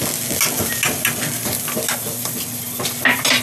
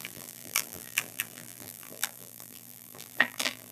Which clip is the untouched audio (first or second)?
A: first